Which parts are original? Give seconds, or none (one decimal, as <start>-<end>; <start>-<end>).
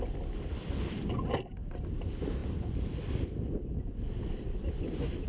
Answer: 0.0-5.3